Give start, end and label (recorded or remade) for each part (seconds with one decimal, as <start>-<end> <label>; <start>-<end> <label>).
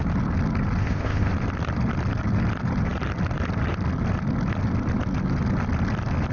0.0-0.8 recorded; 0.8-1.3 remade; 1.3-6.3 recorded